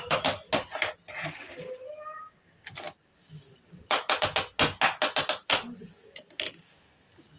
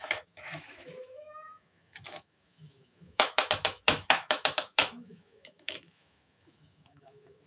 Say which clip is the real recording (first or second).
first